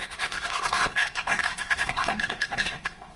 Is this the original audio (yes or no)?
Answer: no